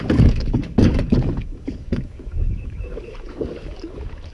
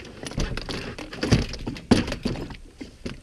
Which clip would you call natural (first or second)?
second